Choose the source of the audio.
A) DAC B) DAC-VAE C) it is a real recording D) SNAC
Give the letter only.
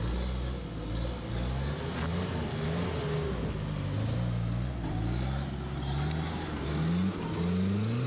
C